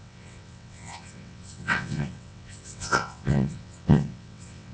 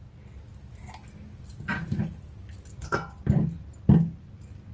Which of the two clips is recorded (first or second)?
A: second